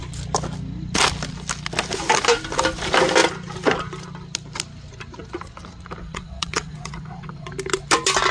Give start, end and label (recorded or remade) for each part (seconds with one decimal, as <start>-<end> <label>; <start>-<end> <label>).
0.0-6.0 recorded; 6.0-7.5 remade; 7.5-8.3 recorded